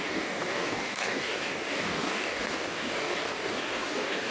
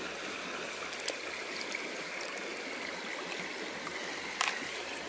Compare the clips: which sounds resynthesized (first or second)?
first